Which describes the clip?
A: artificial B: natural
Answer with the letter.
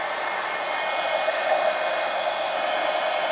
B